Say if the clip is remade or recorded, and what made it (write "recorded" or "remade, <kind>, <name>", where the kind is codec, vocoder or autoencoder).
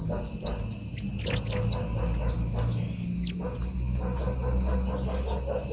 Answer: recorded